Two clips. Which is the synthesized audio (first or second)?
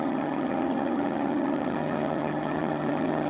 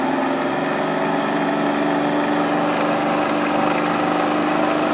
first